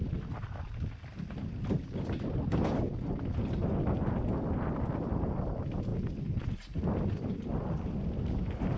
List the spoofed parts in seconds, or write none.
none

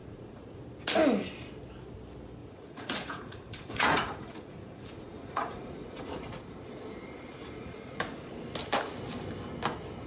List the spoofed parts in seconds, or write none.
0.0-0.6 (vocoder, Vocos); 2.4-6.0; 7.6-8.3

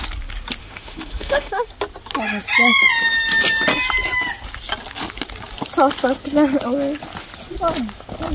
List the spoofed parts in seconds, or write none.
0.6-1.7 (autoencoder, DAC-VAE)

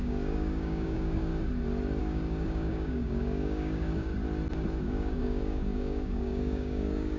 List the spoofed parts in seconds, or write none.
0.0-1.3 (codec, DAC); 2.0-4.1; 4.8-7.2